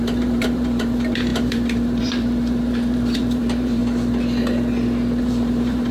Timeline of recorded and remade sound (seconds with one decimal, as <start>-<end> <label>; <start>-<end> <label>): 0.0-3.8 remade; 3.8-5.2 recorded; 5.2-5.9 remade